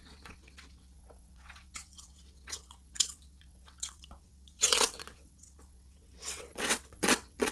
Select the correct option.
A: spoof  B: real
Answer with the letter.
A